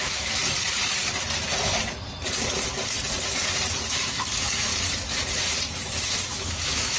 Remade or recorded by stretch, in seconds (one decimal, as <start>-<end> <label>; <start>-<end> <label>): 0.0-0.4 remade; 0.4-3.9 recorded; 3.9-4.7 remade; 4.7-6.3 recorded; 6.3-7.0 remade